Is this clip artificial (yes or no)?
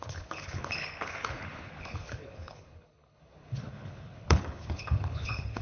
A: yes